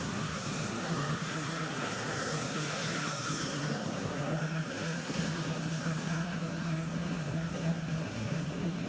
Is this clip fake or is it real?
fake